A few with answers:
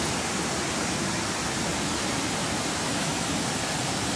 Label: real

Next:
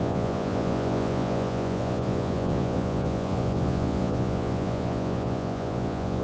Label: fake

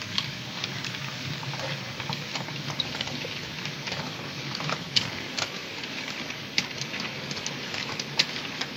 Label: fake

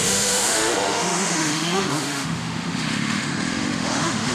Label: fake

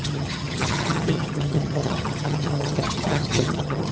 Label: fake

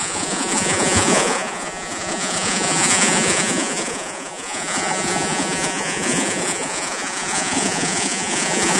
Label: fake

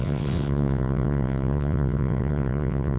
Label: fake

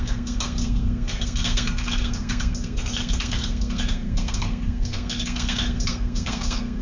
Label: fake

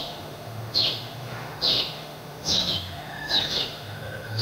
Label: fake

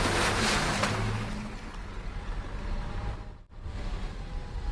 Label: real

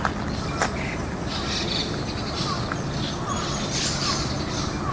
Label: real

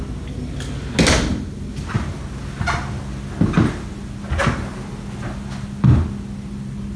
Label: real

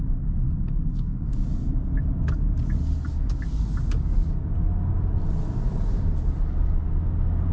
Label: real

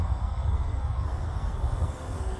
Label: fake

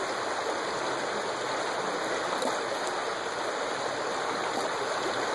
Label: real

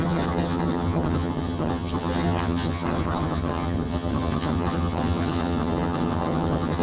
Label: fake